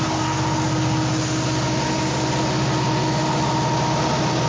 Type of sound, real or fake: real